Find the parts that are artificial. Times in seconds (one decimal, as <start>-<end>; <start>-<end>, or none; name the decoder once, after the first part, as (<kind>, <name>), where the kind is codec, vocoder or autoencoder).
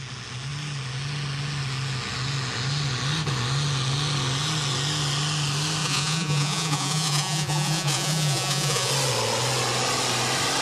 5.8-8.9 (vocoder, Vocos)